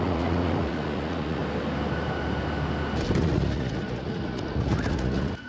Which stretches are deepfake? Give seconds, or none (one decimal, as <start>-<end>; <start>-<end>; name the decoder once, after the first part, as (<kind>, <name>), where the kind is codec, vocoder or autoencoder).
0.0-1.4 (vocoder, Vocos); 3.2-5.5